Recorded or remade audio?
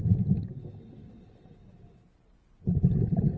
recorded